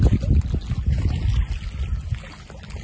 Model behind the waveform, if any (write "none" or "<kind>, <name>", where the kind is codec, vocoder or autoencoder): none